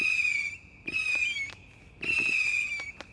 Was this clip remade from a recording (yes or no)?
no